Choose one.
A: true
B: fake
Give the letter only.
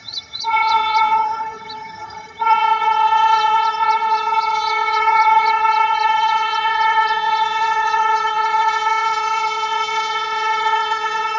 B